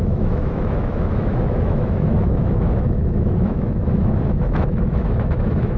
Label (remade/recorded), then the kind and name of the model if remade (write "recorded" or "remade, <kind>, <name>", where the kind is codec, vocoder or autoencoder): remade, autoencoder, DAC-VAE